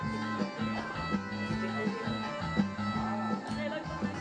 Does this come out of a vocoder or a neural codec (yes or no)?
no